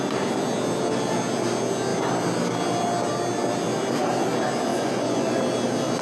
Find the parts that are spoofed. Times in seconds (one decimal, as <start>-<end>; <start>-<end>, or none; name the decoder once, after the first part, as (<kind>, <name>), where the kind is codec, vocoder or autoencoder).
4.7-5.4 (vocoder, Vocos)